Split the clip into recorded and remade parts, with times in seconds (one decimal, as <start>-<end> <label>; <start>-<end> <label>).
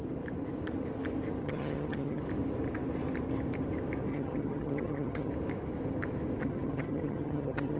0.0-1.4 recorded; 1.4-2.2 remade; 2.2-4.1 recorded; 4.1-5.3 remade; 5.3-6.4 recorded; 6.4-7.8 remade